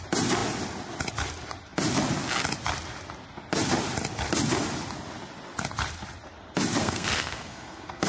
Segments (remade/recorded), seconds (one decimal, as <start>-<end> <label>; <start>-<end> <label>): 0.0-6.8 recorded; 6.8-8.1 remade